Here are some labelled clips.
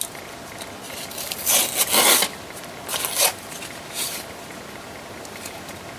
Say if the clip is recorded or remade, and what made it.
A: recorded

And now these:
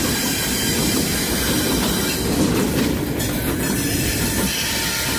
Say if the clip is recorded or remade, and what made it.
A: remade, vocoder, BigVGAN v2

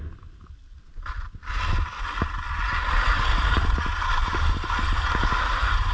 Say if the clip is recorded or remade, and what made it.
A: recorded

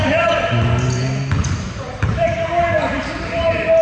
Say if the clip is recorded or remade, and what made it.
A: remade, vocoder, BigVGAN v2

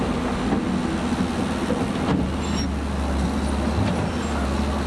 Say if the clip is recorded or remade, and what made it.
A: recorded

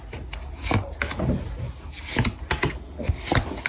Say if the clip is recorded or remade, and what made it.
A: recorded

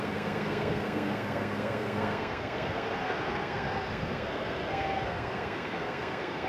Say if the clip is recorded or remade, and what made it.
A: remade, codec, SNAC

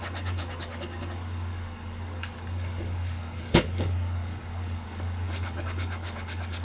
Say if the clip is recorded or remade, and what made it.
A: remade, codec, DAC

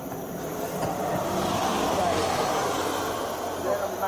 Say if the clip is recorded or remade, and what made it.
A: recorded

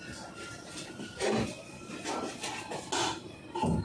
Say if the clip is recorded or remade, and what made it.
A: recorded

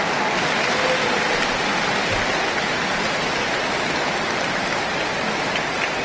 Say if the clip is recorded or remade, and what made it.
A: recorded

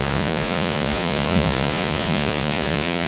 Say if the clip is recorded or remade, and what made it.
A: remade, vocoder, Vocos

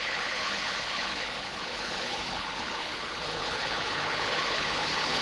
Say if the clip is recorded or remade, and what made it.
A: remade, codec, HILCodec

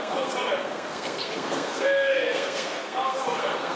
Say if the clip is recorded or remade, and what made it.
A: remade, codec, SNAC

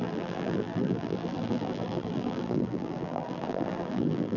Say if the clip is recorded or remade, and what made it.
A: remade, vocoder, BigVGAN v2